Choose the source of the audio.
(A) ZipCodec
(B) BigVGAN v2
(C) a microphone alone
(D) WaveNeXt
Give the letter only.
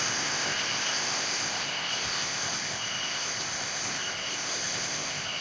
A